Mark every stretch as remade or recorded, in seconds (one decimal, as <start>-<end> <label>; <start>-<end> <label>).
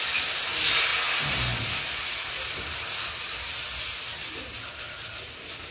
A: 0.0-5.7 recorded